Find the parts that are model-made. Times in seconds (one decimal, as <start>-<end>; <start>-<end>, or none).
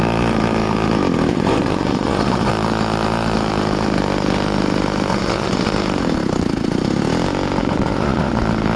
1.3-2.5; 5.1-5.7; 7.6-8.4